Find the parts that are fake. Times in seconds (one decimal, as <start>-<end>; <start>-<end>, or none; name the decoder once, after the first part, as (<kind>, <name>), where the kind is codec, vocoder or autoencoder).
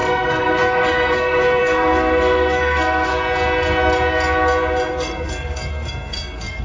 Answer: 0.0-3.1 (codec, SNAC); 4.9-6.6